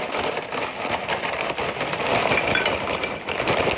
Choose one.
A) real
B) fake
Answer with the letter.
B